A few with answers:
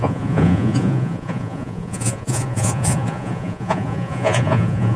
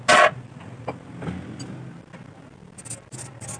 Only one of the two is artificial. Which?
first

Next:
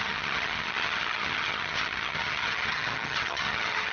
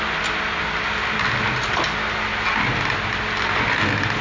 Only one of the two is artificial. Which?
first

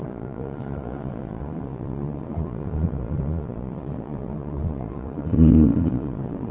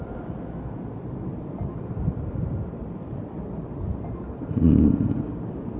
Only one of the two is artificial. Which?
first